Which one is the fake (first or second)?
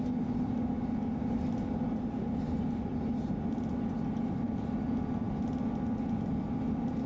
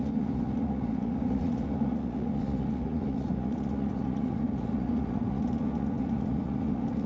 second